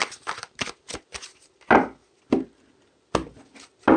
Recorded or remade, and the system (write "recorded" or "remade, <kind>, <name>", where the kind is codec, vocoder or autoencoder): recorded